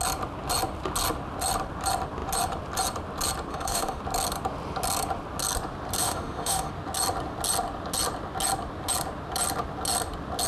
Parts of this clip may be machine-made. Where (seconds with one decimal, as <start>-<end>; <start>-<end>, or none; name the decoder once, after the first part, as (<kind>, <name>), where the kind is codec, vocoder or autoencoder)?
3.5-4.0 (autoencoder, DAC-VAE); 6.0-6.7